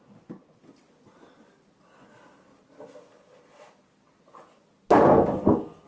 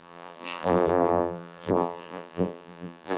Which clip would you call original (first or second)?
first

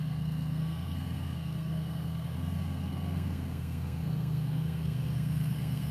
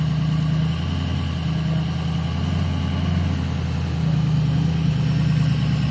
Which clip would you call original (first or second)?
second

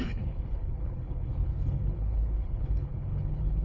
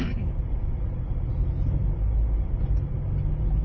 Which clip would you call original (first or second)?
second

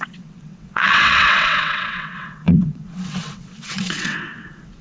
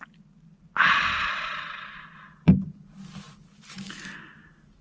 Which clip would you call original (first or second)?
second